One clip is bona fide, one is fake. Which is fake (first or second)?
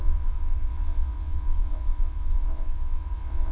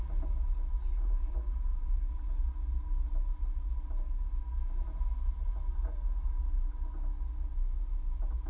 first